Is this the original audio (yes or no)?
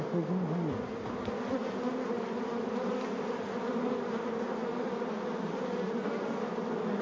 yes